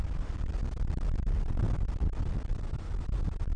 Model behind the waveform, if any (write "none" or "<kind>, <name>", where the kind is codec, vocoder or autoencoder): none